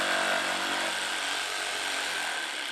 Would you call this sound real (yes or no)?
yes